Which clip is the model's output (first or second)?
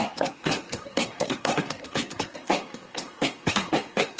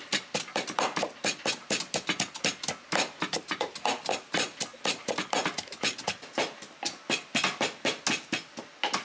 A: first